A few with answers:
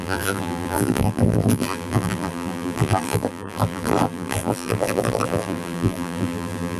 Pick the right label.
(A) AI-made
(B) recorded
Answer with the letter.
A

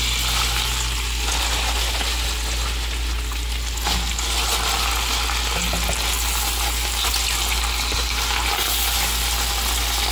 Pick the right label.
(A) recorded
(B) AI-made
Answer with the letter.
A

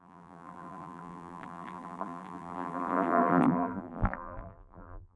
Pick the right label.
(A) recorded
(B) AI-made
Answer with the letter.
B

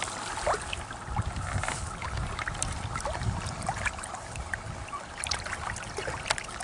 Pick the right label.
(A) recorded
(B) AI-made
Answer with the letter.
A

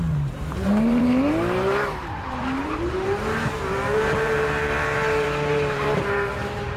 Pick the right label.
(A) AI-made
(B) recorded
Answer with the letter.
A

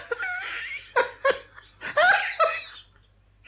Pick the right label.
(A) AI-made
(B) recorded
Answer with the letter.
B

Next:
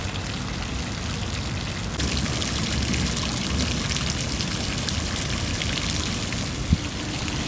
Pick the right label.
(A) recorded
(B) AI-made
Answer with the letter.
A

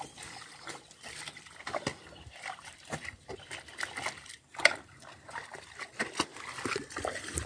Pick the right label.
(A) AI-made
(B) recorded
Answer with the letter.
A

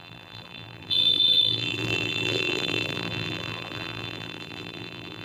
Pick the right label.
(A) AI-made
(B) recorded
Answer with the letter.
A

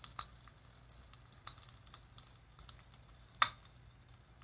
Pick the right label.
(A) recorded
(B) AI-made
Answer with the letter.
A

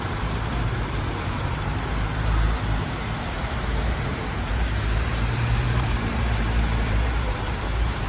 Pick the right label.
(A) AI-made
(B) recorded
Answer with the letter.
A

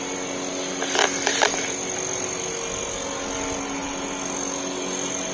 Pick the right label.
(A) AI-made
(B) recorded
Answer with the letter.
B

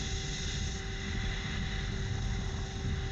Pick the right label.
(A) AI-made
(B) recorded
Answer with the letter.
B